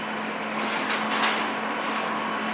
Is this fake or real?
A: real